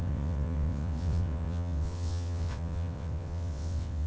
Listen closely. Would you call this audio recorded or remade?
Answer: remade